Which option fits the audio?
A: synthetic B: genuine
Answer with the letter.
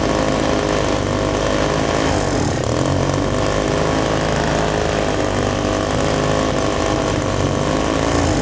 B